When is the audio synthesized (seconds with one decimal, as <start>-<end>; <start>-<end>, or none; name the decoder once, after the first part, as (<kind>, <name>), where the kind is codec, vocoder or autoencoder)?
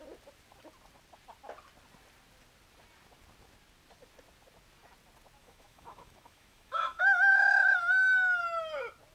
5.4-8.4 (autoencoder, DAC-VAE)